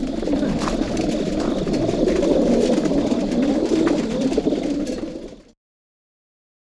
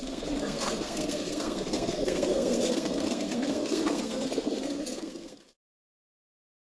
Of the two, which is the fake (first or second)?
second